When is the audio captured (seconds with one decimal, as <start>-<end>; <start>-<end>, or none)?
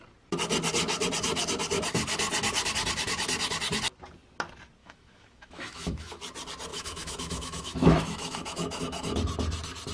0.0-4.8; 6.2-6.7; 8.8-9.9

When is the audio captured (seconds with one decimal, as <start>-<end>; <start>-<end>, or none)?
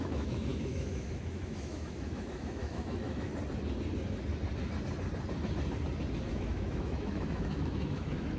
3.3-6.3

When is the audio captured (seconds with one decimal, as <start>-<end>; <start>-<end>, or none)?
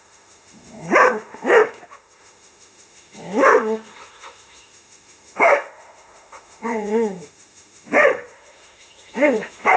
none